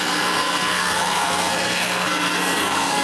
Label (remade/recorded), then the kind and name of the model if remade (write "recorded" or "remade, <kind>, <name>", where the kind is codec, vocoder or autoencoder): remade, codec, SNAC